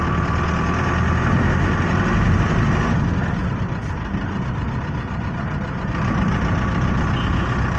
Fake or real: real